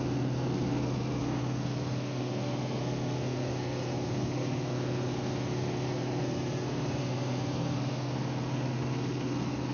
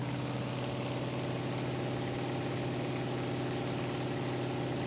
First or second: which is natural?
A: second